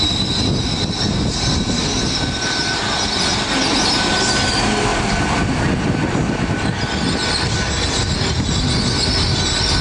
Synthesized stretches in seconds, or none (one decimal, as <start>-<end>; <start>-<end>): none